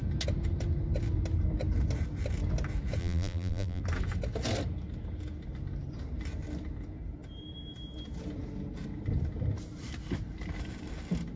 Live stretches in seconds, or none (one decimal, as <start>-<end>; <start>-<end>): 0.0-3.0; 3.8-11.4